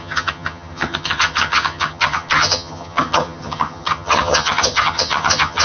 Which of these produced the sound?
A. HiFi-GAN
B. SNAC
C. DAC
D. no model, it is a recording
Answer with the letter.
A